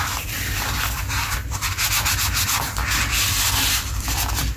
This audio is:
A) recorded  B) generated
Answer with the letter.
A